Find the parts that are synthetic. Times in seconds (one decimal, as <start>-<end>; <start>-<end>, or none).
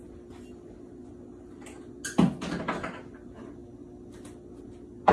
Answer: none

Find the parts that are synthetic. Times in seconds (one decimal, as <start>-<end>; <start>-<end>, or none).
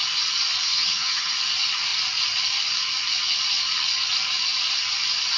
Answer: 0.7-1.3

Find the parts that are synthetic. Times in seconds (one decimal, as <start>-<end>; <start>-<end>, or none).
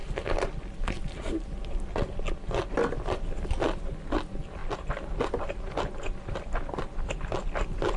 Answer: none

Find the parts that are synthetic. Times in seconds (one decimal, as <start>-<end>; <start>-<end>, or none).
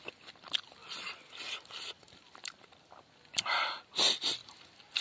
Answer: none